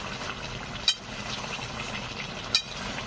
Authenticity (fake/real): real